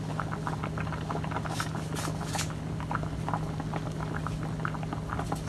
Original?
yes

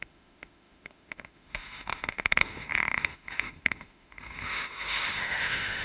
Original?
no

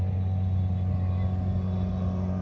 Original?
yes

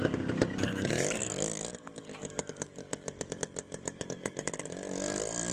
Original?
no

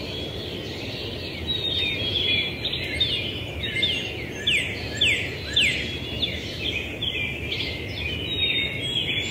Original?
yes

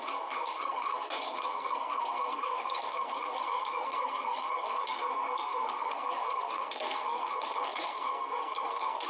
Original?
no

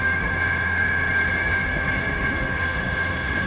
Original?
no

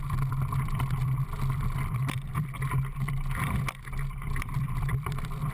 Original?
no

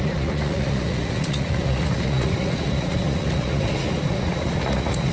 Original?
no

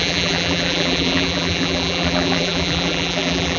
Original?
no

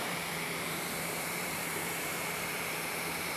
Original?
no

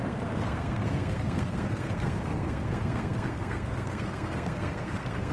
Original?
no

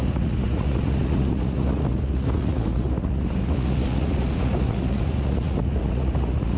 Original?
no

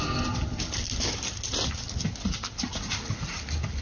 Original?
yes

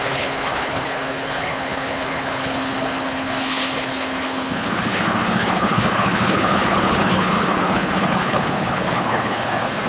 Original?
no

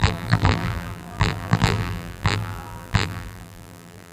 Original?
no